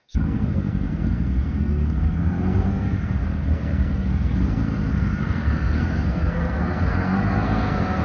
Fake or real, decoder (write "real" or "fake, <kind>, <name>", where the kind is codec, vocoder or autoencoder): fake, codec, SNAC